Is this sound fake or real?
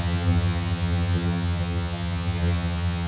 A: fake